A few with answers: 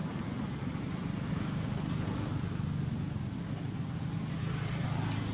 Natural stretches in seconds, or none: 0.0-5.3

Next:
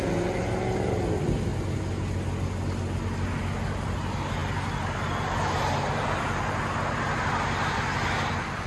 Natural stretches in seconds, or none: 0.0-8.7

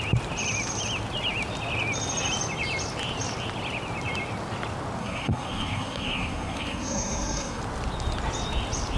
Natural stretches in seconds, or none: 0.0-5.0; 7.6-9.0